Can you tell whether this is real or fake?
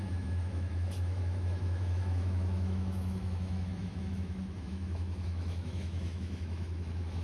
fake